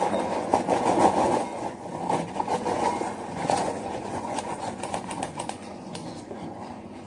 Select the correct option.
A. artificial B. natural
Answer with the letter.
A